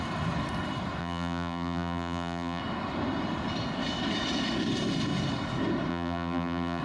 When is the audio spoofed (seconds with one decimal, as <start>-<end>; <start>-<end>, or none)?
1.0-2.6; 5.9-6.8